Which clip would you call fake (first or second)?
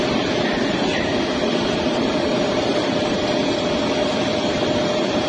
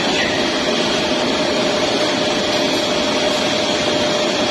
first